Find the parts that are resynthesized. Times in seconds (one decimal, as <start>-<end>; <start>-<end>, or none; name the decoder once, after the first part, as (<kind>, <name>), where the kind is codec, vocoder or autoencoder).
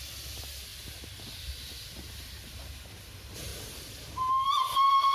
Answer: 0.7-2.5 (vocoder, BigVGAN v2); 3.5-4.0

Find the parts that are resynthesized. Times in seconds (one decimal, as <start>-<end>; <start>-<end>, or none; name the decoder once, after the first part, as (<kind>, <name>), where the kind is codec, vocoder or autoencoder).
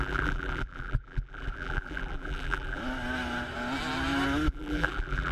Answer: 0.0-2.8 (vocoder, BigVGAN v2); 4.5-5.3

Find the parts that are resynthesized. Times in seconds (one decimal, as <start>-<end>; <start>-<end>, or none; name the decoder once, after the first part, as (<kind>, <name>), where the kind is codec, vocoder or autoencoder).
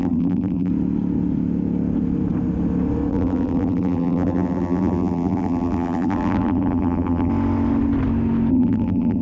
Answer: 0.0-0.7 (vocoder, BigVGAN v2); 3.1-7.3; 8.5-9.2